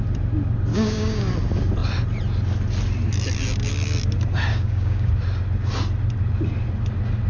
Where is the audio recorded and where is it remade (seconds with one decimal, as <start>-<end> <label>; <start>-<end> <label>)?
0.0-0.7 recorded; 0.7-1.3 remade; 1.3-4.5 recorded; 4.5-5.1 remade; 5.1-7.3 recorded

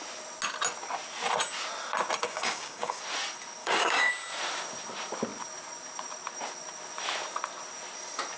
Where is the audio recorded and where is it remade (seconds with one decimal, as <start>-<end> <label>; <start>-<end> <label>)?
0.0-2.2 recorded; 2.2-3.0 remade; 3.0-3.6 recorded; 3.6-4.1 remade; 4.1-8.4 recorded

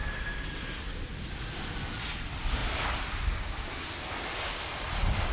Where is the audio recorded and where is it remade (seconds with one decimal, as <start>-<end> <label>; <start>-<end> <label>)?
0.0-5.3 recorded

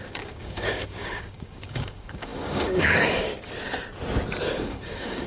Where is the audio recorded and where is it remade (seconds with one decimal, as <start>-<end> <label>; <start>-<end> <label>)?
0.0-3.3 remade; 3.3-4.4 recorded; 4.4-5.3 remade

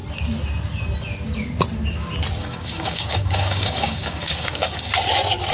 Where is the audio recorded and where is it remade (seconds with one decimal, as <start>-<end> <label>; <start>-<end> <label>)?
0.0-2.4 recorded; 2.4-4.9 remade; 4.9-5.5 recorded